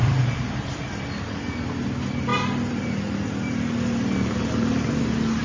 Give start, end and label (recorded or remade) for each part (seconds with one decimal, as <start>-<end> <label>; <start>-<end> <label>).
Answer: 0.0-1.1 remade; 1.1-5.4 recorded